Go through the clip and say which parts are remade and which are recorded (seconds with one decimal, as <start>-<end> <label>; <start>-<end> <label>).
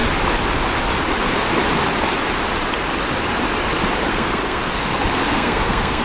0.0-4.1 recorded; 4.1-4.6 remade; 4.6-5.3 recorded; 5.3-6.0 remade